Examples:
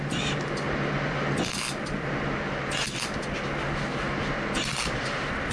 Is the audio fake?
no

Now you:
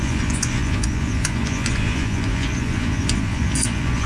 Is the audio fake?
yes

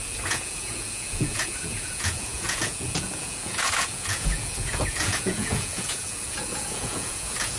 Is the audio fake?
yes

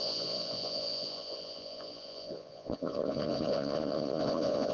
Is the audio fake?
yes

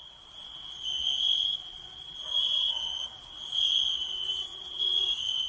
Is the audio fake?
yes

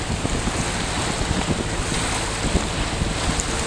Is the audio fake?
no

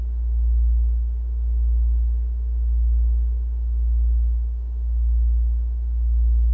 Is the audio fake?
no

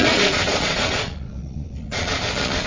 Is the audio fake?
yes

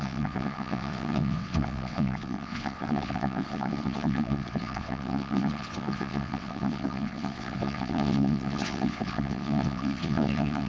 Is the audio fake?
yes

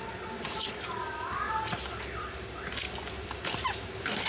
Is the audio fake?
no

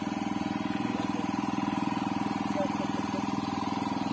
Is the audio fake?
no